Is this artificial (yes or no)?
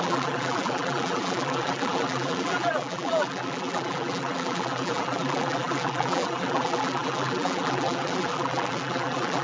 yes